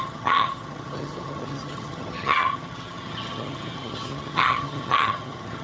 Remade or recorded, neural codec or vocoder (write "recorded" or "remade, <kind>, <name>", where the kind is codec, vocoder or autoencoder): remade, vocoder, HiFi-GAN